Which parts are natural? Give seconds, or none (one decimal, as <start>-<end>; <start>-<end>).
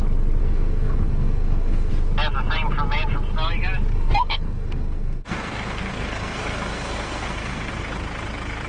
0.0-0.4; 1.9-3.9; 7.7-8.7